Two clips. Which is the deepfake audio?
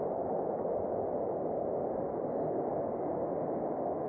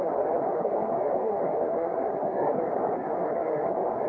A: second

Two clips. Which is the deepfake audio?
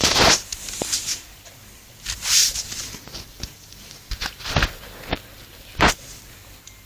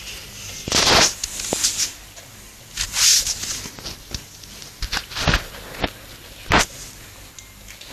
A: first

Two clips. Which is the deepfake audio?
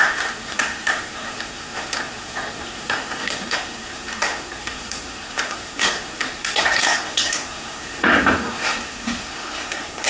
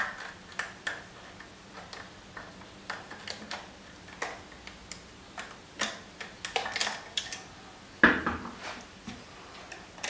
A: first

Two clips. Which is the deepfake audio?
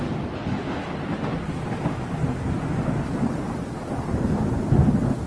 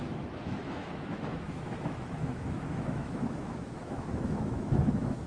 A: second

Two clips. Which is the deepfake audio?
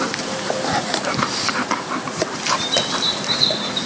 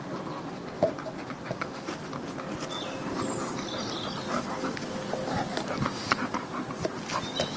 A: first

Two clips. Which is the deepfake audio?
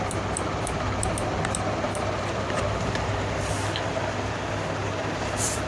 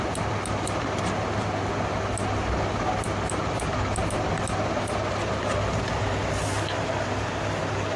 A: first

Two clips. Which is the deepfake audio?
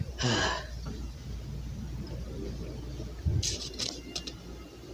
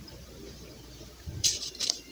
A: second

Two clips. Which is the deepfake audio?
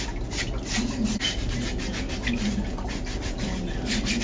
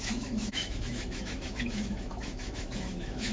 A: second